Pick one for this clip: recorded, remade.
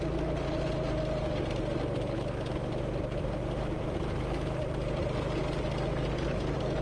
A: recorded